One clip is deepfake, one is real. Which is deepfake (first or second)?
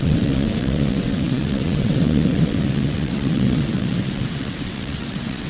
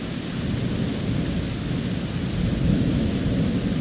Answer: first